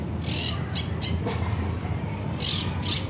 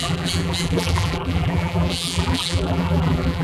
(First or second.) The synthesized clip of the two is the second